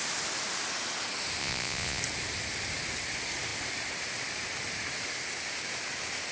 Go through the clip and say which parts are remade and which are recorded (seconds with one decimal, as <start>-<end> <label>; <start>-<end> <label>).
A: 0.0-1.4 recorded; 1.4-2.0 remade; 2.0-6.3 recorded